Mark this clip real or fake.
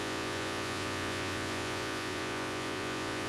fake